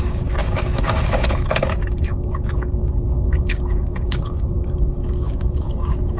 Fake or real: fake